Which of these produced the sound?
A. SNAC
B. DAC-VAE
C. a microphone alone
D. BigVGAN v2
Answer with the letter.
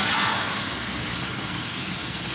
A